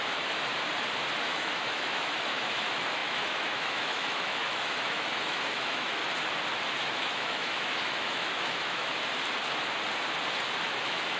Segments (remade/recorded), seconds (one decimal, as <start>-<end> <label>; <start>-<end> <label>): 0.0-0.5 remade; 0.5-1.2 recorded; 1.2-6.0 remade; 6.0-6.8 recorded; 6.8-8.9 remade; 8.9-10.5 recorded; 10.5-11.2 remade